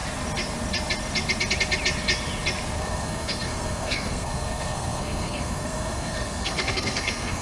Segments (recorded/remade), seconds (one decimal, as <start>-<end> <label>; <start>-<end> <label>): 0.0-2.8 recorded; 2.8-7.4 remade